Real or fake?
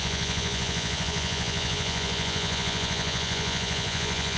fake